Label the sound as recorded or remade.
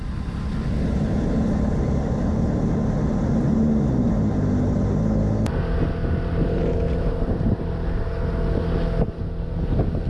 recorded